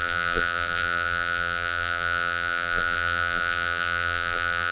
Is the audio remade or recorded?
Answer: remade